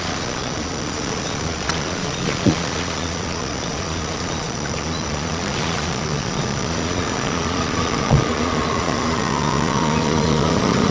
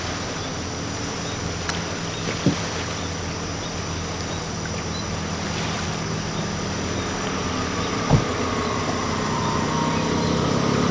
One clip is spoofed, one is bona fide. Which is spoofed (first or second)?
first